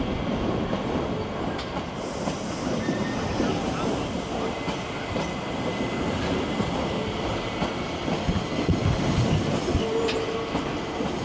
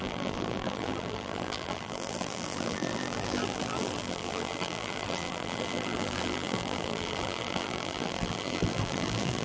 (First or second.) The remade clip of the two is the second